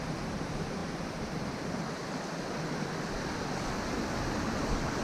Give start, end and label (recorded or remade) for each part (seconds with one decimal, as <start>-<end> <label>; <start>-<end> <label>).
0.0-5.0 recorded

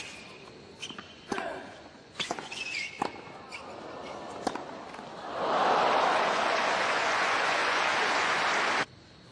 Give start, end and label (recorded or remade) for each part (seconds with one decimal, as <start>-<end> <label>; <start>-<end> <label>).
0.0-0.8 recorded; 0.8-3.0 remade; 3.0-6.1 recorded; 6.1-8.4 remade; 8.4-9.3 recorded

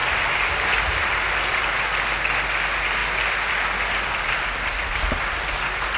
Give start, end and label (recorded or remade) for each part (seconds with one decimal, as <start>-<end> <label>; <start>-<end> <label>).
0.0-6.0 recorded

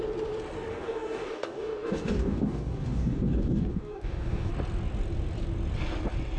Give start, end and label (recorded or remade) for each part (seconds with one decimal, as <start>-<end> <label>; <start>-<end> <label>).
0.0-0.7 recorded; 0.7-4.5 remade; 4.5-6.4 recorded

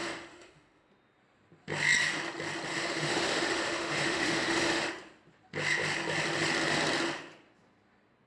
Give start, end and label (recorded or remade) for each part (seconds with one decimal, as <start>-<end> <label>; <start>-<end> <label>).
0.0-0.9 remade; 0.9-2.7 recorded; 2.7-4.9 remade; 4.9-8.3 recorded

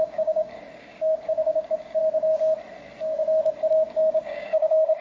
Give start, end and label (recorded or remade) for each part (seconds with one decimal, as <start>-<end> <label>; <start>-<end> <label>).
0.0-2.0 remade; 2.0-3.7 recorded; 3.7-5.0 remade